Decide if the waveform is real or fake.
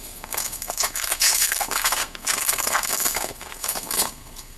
fake